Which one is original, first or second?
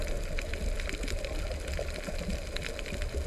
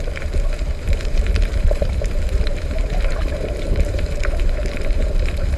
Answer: first